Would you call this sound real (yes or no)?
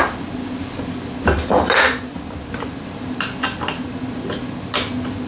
yes